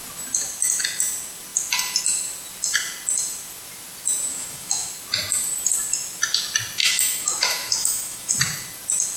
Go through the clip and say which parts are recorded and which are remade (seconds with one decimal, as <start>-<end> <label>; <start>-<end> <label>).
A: 0.0-4.3 recorded; 4.3-4.9 remade; 4.9-6.8 recorded; 6.8-8.3 remade; 8.3-9.2 recorded